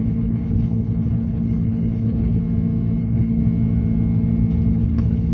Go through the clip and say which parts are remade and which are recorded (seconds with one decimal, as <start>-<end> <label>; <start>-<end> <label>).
0.0-2.4 remade; 2.4-3.0 recorded; 3.0-3.4 remade; 3.4-4.7 recorded; 4.7-5.3 remade